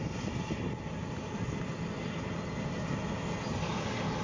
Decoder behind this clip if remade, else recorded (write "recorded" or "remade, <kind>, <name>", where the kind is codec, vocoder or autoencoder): recorded